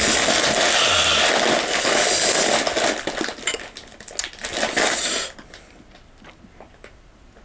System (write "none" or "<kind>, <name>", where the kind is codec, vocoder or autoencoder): none